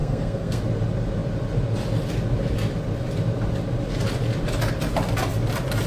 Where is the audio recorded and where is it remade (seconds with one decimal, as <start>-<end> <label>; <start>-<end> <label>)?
0.0-0.6 remade; 0.6-5.9 recorded